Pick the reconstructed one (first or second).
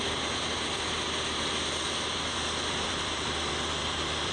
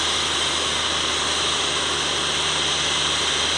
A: first